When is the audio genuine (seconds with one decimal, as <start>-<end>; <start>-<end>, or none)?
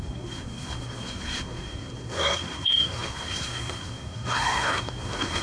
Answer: none